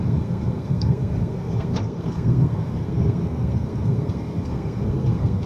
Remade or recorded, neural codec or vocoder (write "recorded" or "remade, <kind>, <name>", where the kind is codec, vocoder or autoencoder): remade, codec, SNAC